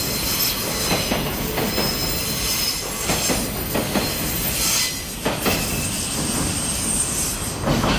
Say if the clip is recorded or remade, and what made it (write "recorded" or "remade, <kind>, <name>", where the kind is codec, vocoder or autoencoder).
recorded